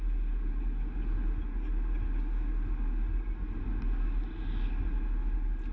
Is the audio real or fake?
real